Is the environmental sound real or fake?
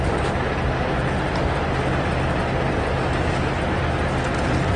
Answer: real